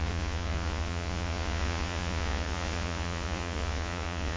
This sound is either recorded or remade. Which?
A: remade